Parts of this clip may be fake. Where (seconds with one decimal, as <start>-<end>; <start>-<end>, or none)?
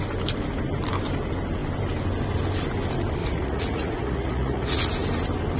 3.2-4.9